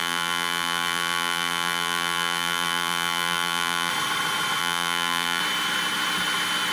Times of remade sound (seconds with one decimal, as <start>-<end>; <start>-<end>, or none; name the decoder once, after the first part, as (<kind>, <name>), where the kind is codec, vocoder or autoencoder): 0.0-3.9 (vocoder, BigVGAN v2); 4.6-5.4

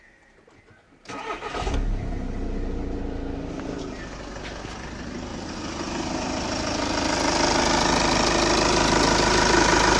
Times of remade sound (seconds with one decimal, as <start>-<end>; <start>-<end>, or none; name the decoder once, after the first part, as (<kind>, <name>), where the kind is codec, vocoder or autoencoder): none

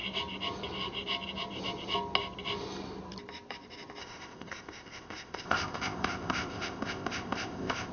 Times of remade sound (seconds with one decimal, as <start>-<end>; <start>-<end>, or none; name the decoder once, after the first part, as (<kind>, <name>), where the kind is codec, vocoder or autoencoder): 4.0-7.9 (codec, ZipCodec)

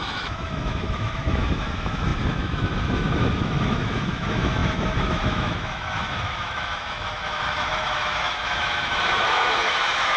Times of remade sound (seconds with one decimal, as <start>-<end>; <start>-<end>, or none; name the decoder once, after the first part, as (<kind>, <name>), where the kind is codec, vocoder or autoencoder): 0.0-10.2 (autoencoder, DAC-VAE)